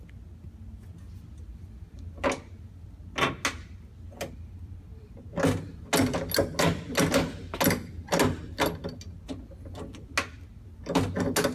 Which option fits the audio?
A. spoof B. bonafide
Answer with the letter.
B